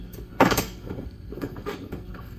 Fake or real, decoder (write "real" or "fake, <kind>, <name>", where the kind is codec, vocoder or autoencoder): fake, codec, SNAC